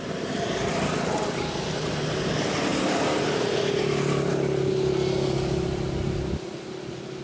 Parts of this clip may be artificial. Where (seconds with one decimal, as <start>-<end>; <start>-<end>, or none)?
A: none